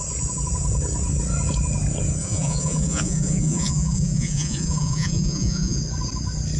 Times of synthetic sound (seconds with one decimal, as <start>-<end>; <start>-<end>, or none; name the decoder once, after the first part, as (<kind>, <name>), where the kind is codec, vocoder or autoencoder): 2.2-5.8 (vocoder, Vocos)